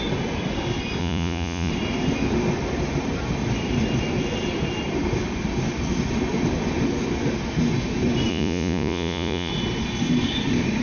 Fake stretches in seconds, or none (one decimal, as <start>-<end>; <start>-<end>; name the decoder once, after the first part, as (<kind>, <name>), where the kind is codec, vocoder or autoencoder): 1.0-1.7 (vocoder, Vocos); 8.3-9.5